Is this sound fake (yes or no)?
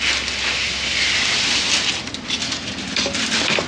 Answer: no